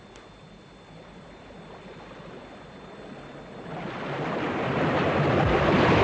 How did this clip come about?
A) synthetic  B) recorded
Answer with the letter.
B